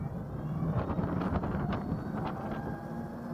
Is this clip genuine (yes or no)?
yes